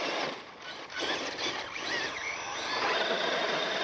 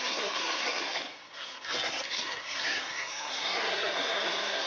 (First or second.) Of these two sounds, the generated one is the second